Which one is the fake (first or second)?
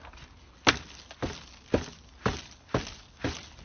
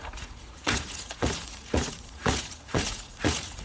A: second